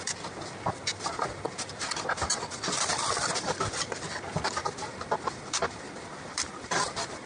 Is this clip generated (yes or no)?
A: yes